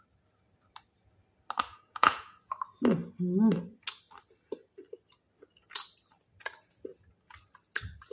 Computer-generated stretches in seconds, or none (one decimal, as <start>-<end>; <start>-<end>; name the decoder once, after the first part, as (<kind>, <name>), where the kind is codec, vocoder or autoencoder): 1.7-2.5 (vocoder, Vocos)